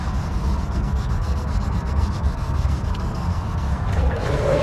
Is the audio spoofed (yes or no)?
yes